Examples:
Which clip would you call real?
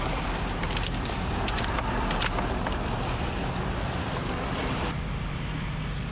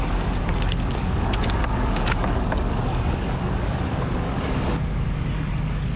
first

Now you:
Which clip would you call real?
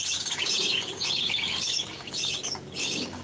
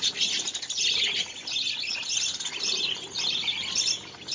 second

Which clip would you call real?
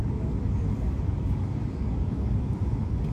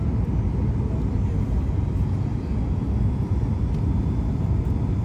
second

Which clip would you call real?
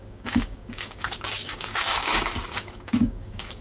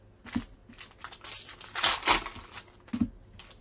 second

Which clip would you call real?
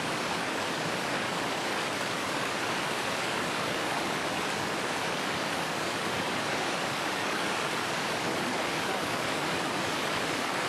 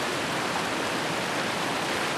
second